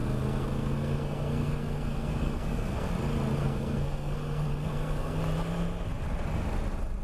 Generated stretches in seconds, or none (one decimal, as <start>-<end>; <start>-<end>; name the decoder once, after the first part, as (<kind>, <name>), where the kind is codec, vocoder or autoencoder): 0.0-2.9 (codec, SNAC); 3.4-5.2